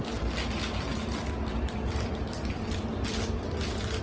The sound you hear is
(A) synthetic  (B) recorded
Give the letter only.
B